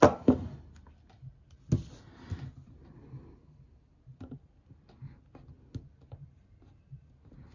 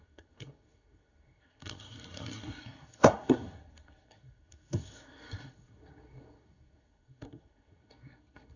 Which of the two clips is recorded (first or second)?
first